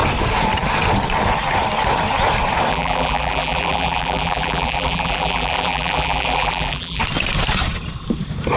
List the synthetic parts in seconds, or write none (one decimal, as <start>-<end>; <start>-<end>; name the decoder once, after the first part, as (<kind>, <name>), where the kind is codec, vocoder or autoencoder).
2.7-7.0 (vocoder, BigVGAN v2)